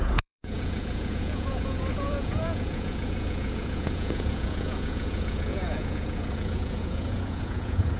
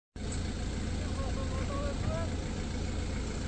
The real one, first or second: second